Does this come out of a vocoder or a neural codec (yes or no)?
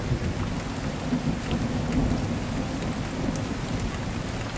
no